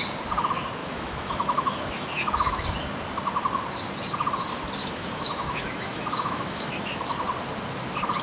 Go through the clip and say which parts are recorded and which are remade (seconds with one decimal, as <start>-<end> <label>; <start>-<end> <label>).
0.0-0.8 recorded; 0.8-2.6 remade; 2.6-4.8 recorded; 4.8-7.0 remade; 7.0-8.2 recorded